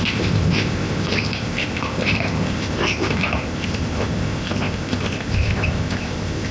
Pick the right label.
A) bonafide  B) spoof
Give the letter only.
B